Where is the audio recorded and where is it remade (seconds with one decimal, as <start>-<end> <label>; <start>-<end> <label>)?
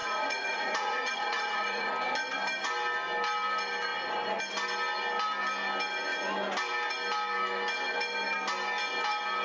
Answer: 0.0-1.9 remade; 1.9-9.4 recorded